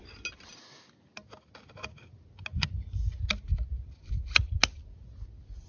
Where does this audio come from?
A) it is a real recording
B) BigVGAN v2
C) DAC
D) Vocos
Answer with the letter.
A